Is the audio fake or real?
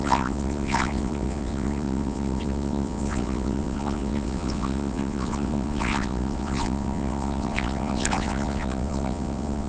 fake